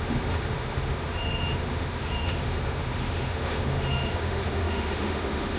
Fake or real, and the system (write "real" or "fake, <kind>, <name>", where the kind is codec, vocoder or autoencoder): fake, autoencoder, DAC-VAE